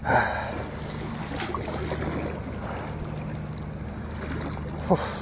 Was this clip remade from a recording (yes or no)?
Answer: no